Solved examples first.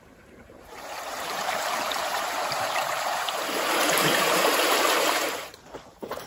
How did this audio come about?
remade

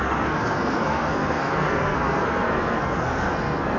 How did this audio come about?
remade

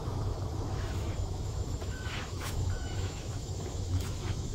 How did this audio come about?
remade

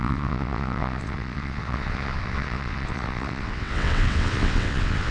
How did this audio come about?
remade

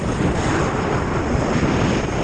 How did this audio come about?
remade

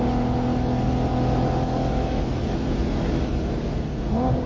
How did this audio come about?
recorded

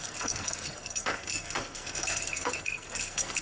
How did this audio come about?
remade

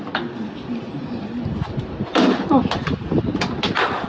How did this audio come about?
recorded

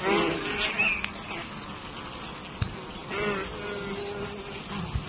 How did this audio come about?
recorded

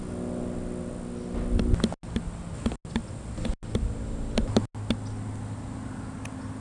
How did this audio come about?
recorded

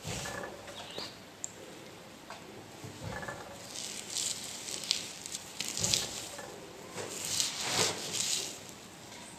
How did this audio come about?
remade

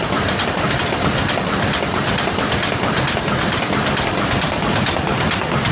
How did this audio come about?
recorded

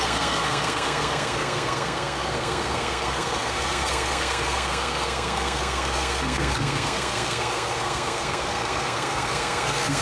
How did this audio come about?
remade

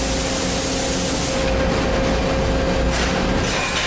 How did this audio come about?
recorded